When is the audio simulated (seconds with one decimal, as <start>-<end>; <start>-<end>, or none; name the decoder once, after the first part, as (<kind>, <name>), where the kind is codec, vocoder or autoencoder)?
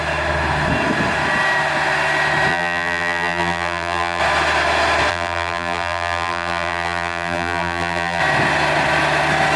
2.5-4.2 (vocoder, BigVGAN v2); 5.1-8.2